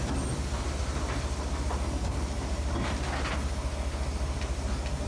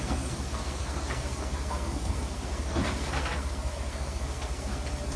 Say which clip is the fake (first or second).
second